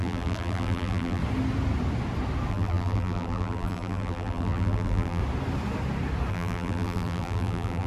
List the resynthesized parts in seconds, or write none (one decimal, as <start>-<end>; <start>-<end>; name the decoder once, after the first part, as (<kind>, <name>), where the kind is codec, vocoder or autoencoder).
0.0-1.2 (vocoder, BigVGAN v2); 2.5-5.2; 6.3-7.9